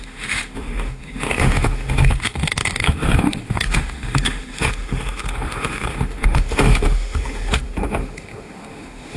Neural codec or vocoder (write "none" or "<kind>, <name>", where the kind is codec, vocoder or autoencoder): autoencoder, DAC-VAE